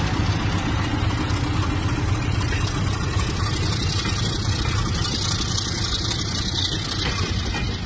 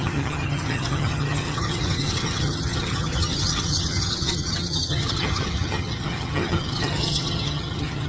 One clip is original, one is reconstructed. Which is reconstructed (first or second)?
second